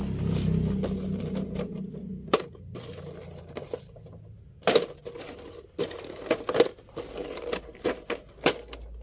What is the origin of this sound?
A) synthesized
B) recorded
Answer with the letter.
B